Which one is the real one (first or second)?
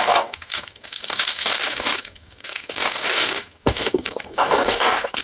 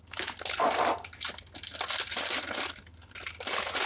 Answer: second